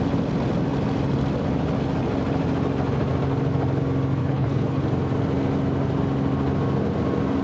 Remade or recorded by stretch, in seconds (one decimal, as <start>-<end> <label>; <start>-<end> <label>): 0.0-4.2 recorded; 4.2-4.8 remade; 4.8-7.4 recorded